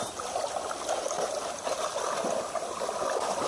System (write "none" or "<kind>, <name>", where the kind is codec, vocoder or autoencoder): none